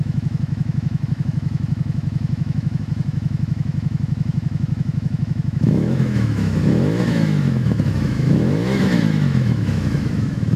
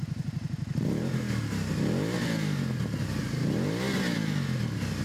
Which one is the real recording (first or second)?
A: second